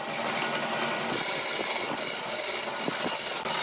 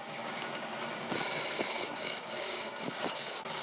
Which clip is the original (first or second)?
first